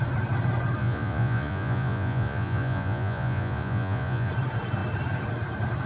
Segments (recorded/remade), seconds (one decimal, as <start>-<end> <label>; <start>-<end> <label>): 0.0-0.8 recorded; 0.8-4.3 remade; 4.3-5.9 recorded